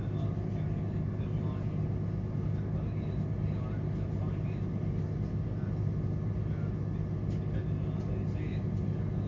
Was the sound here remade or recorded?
recorded